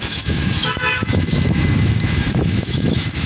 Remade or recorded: remade